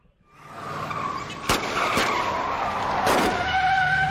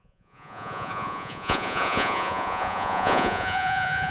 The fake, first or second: second